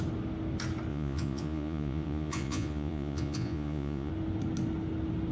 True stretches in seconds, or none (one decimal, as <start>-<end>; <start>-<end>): 0.0-0.9; 4.1-5.3